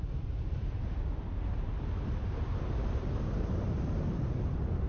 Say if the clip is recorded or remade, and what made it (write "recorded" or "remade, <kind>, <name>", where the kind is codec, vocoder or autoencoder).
recorded